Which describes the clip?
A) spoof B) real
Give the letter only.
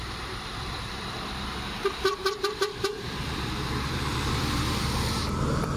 A